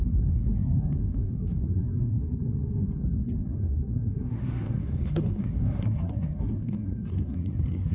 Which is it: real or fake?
fake